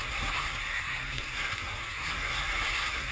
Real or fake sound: fake